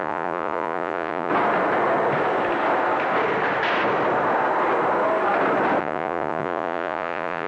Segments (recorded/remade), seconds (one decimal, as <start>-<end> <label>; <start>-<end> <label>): 0.0-1.3 remade; 1.3-5.8 recorded; 5.8-7.5 remade